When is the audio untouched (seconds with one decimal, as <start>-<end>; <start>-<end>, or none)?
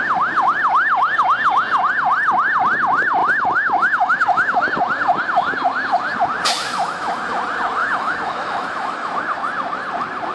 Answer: 0.0-3.2; 4.6-6.7; 7.2-7.8; 9.2-10.3